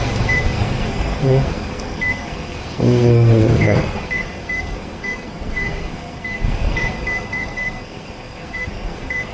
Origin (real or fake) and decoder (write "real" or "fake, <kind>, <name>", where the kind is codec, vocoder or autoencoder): fake, codec, SNAC